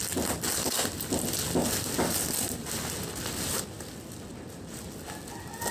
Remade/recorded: recorded